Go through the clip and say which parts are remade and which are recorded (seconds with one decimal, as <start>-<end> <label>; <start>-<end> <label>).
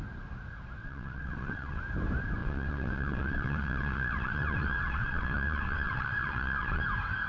0.0-0.8 recorded; 0.8-1.8 remade; 1.8-2.4 recorded; 2.4-6.8 remade; 6.8-7.3 recorded